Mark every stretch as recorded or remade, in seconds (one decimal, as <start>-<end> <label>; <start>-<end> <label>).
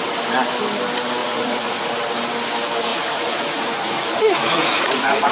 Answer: 0.0-1.2 recorded; 1.2-1.9 remade; 1.9-2.9 recorded; 2.9-5.3 remade